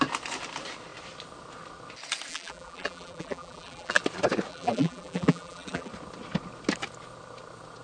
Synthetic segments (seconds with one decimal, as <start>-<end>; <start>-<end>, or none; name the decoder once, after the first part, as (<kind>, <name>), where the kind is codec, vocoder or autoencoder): 2.3-4.0 (vocoder, BigVGAN v2); 4.5-5.9